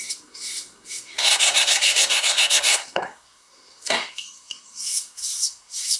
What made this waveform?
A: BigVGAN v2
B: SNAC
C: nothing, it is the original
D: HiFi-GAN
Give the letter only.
B